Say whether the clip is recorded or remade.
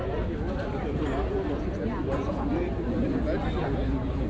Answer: recorded